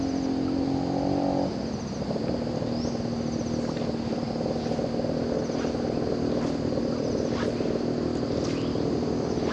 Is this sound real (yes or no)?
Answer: yes